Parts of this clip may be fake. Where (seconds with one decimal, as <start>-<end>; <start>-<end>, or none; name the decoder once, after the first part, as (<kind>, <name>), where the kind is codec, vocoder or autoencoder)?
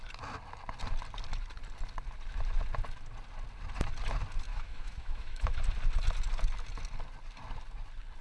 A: 4.5-5.5 (autoencoder, DAC-VAE)